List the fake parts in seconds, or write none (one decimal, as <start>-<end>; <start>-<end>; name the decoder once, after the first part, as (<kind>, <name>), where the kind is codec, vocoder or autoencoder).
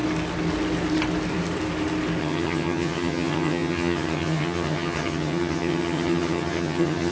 2.2-7.1 (vocoder, HiFi-GAN)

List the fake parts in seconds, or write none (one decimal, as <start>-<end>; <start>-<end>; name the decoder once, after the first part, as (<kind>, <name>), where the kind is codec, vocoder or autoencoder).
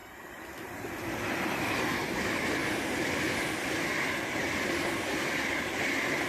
0.0-2.2 (vocoder, BigVGAN v2); 2.6-5.2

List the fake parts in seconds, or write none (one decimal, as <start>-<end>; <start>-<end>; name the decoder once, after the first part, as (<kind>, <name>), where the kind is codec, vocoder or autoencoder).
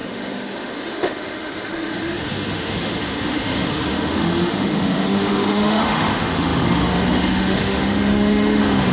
0.0-8.9 (autoencoder, DAC-VAE)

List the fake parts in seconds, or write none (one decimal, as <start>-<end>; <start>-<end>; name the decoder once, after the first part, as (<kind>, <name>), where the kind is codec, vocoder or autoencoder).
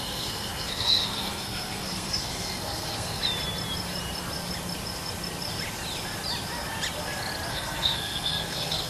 0.0-3.2 (codec, SNAC); 7.5-8.9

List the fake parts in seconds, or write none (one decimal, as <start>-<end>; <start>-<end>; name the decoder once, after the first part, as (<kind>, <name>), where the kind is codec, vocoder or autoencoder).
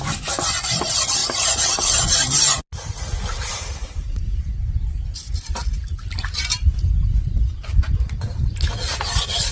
none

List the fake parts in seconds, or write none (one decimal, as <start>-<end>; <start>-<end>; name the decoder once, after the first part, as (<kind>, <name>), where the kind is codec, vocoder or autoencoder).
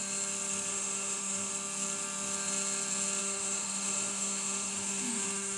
0.7-1.5 (autoencoder, DAC-VAE); 3.2-5.6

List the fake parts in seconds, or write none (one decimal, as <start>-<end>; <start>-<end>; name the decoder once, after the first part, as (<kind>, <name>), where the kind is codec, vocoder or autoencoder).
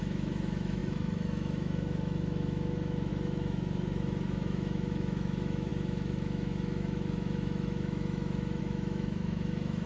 0.0-9.9 (autoencoder, DAC-VAE)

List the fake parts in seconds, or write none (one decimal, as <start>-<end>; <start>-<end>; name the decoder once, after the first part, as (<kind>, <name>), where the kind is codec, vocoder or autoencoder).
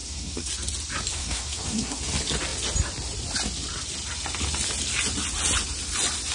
0.0-0.5 (codec, SNAC); 1.1-2.0